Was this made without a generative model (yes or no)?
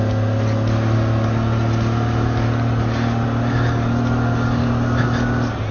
yes